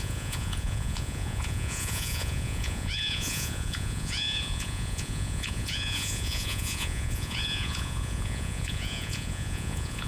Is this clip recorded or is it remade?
remade